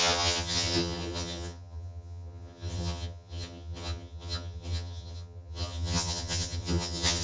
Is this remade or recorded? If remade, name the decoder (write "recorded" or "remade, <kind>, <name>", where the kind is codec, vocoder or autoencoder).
remade, vocoder, HiFi-GAN